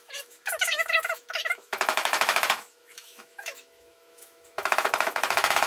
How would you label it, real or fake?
fake